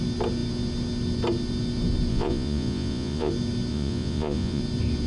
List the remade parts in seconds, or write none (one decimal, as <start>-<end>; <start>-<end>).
2.1-3.3; 3.7-4.6